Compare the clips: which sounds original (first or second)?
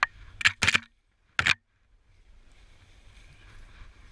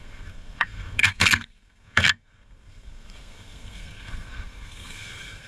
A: first